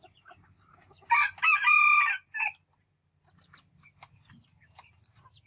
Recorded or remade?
recorded